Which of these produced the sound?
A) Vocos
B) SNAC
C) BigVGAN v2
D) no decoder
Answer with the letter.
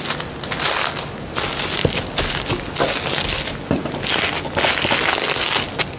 D